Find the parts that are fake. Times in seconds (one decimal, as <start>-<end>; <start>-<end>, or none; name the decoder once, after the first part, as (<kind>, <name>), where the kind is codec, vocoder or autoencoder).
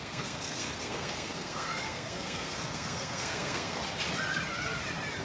0.0-3.8 (codec, SNAC)